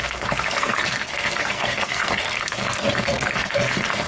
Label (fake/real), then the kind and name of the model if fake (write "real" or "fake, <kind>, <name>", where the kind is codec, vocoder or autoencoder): fake, codec, SNAC